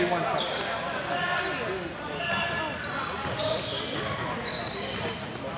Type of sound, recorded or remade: recorded